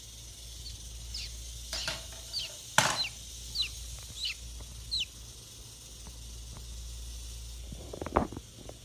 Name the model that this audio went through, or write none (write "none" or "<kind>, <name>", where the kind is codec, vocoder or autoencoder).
none